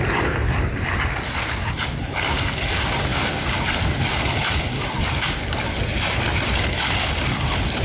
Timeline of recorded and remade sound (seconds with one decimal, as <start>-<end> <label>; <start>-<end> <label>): 0.0-7.8 recorded